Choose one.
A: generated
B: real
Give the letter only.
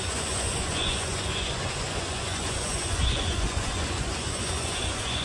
A